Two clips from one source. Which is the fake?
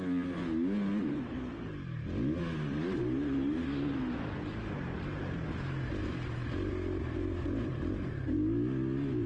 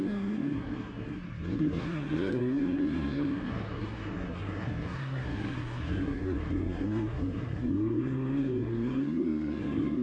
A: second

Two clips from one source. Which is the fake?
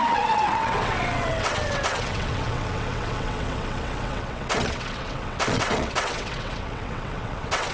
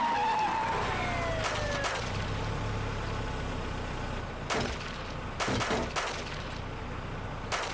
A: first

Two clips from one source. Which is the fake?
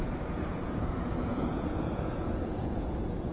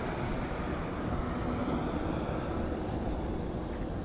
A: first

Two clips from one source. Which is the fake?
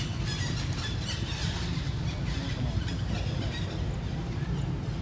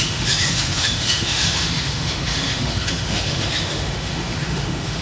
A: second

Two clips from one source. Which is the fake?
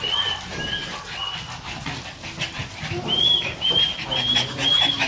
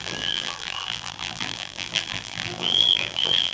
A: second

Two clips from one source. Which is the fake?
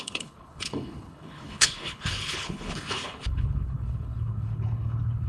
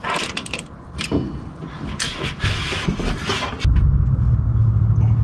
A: first